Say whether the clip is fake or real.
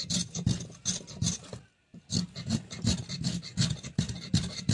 real